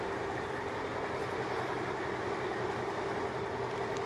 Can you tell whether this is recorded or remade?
recorded